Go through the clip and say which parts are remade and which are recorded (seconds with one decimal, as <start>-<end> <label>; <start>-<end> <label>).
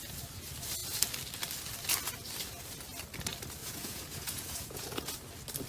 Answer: 0.0-3.6 recorded; 3.6-5.1 remade; 5.1-5.7 recorded